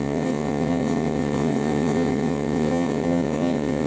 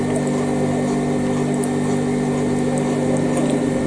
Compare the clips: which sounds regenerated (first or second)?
first